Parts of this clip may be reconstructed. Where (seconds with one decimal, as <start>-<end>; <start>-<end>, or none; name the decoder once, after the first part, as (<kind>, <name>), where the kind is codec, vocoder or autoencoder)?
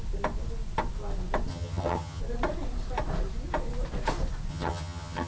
1.5-2.2 (vocoder, HiFi-GAN); 4.5-5.3